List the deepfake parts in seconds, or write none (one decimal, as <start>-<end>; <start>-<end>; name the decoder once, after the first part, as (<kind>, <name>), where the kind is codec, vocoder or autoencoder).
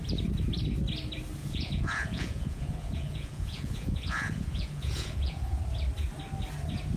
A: 1.4-5.6 (vocoder, Vocos)